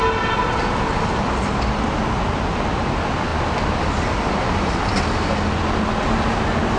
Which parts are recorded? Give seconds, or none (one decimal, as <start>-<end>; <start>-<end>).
0.0-6.8

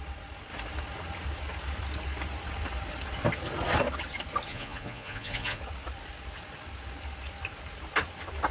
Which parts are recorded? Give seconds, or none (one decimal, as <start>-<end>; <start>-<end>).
0.0-4.5; 5.6-8.5

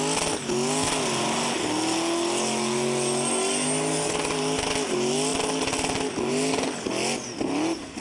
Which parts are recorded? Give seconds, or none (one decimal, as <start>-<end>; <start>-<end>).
0.0-8.0